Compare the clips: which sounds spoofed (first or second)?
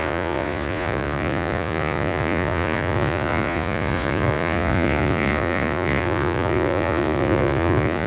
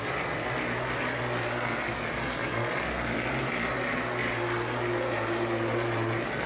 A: first